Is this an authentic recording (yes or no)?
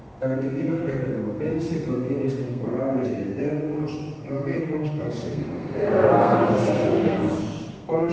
no